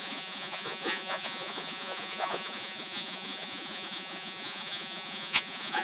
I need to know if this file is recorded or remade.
remade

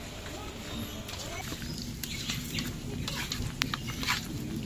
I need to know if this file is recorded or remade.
recorded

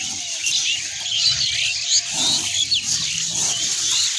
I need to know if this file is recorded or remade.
recorded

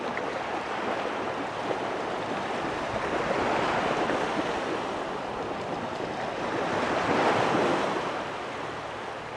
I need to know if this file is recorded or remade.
recorded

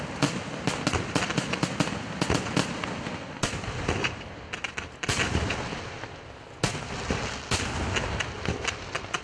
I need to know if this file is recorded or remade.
recorded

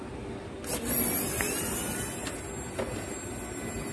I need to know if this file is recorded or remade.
recorded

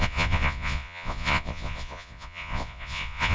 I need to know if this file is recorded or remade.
remade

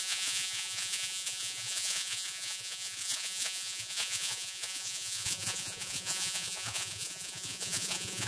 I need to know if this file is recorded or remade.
remade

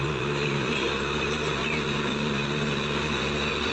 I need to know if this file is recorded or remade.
remade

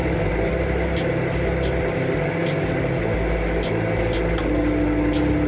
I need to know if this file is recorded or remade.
recorded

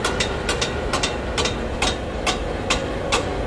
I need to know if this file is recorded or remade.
recorded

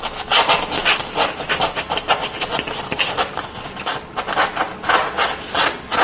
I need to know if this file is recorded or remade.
recorded